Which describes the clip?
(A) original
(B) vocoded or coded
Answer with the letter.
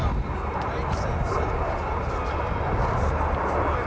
A